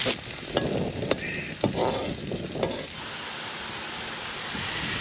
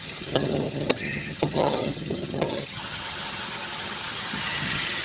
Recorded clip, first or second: first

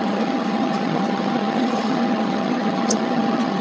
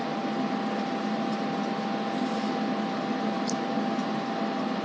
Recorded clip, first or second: second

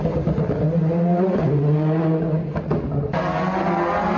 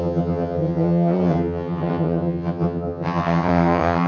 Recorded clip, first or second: first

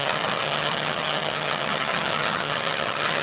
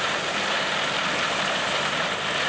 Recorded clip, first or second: second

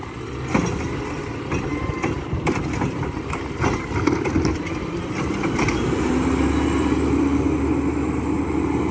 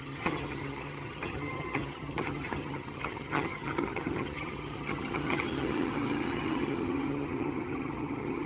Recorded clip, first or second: first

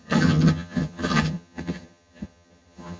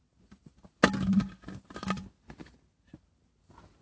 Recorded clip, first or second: second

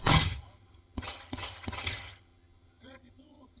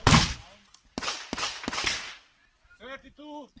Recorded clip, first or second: second